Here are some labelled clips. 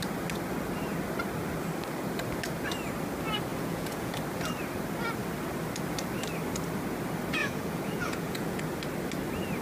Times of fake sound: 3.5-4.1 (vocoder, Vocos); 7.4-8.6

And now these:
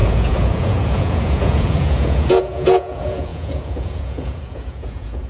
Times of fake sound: 0.0-5.3 (vocoder, Vocos)

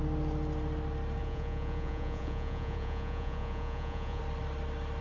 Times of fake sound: 1.2-4.2 (vocoder, Vocos)

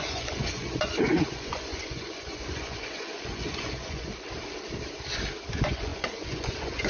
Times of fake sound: 0.0-4.1 (vocoder, Vocos); 5.5-6.9

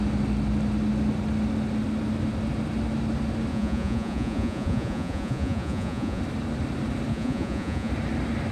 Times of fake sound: 3.5-6.2 (vocoder, Vocos); 7.1-7.9